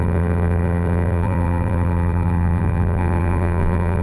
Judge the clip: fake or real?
fake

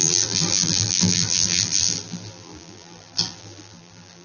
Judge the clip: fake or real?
fake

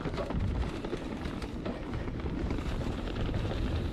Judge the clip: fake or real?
fake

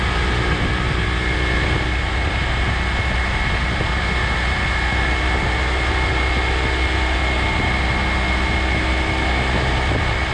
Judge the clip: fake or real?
real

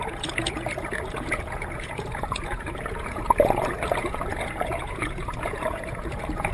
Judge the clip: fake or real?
fake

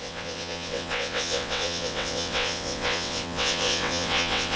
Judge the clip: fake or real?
fake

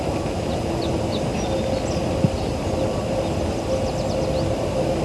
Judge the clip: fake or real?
real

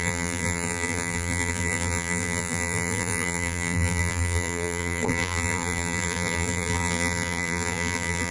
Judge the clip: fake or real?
fake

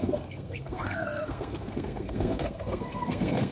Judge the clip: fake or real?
fake